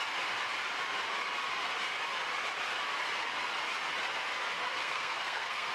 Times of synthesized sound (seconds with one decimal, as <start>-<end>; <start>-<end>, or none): 4.8-5.7